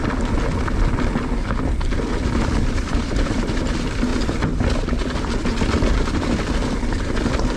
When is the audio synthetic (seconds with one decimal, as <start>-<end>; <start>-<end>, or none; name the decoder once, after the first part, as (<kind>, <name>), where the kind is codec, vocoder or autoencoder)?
2.2-4.1 (vocoder, BigVGAN v2); 5.7-7.6